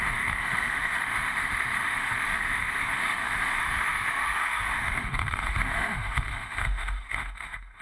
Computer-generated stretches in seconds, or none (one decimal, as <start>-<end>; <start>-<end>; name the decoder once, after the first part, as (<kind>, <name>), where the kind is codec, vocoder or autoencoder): 0.0-7.8 (autoencoder, DAC-VAE)